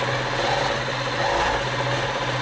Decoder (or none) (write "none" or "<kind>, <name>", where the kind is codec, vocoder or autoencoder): none